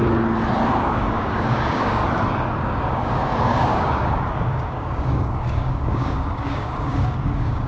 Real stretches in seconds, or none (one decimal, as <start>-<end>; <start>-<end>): 0.0-0.8; 2.0-2.6